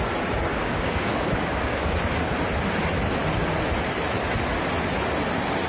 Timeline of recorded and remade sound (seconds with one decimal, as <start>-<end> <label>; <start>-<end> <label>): 0.0-0.5 recorded; 0.5-2.0 remade; 2.0-5.7 recorded